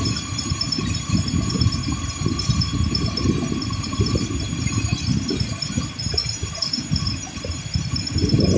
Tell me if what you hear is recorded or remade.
recorded